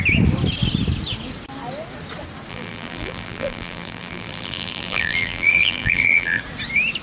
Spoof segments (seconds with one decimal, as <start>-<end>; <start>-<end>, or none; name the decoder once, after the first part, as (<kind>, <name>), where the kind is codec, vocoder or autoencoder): 2.5-6.4 (vocoder, BigVGAN v2)